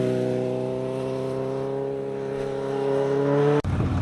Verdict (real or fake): real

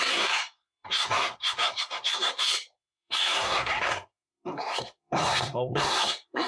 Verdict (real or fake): fake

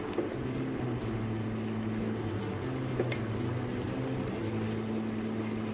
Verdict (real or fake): real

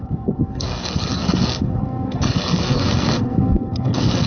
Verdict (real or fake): fake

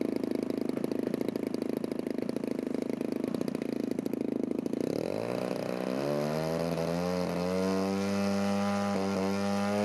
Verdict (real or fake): real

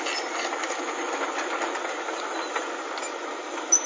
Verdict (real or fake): real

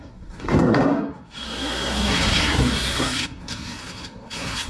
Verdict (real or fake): fake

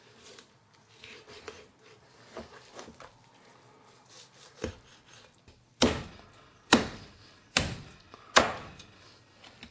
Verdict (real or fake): real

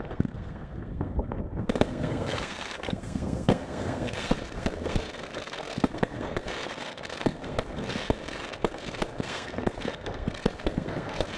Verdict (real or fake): fake